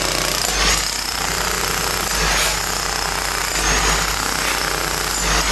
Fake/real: real